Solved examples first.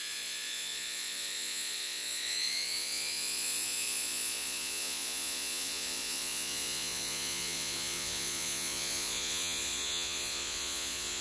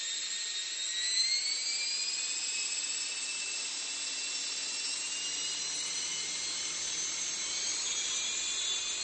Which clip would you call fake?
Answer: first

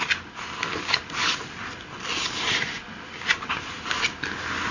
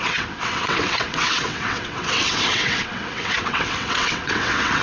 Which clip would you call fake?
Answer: second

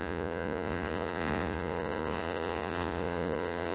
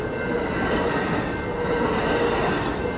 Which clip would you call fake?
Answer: first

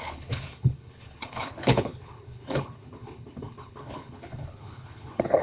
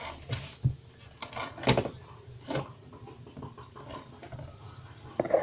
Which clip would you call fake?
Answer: first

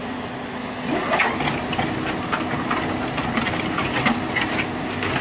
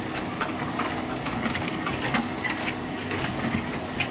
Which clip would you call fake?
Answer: second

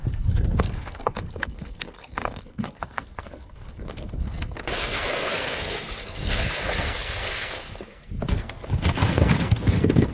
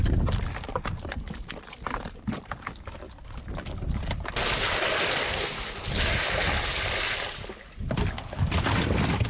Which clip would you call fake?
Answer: first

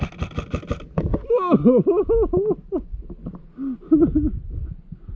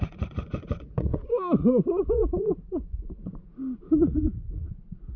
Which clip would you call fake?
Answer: second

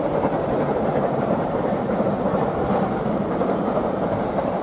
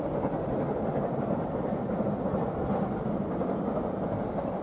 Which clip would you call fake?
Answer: first